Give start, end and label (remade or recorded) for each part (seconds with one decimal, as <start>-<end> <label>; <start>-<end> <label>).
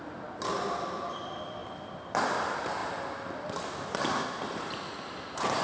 0.0-5.6 recorded